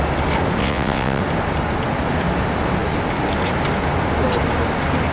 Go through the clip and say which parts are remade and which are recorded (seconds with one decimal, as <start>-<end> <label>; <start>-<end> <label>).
0.0-0.6 recorded; 0.6-1.2 remade; 1.2-5.1 recorded